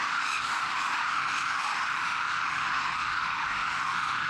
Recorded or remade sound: remade